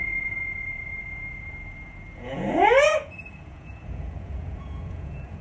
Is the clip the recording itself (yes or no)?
no